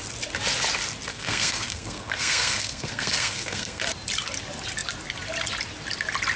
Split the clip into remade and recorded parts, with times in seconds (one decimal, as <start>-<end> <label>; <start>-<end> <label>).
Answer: 0.0-1.1 recorded; 1.1-3.8 remade; 3.8-6.4 recorded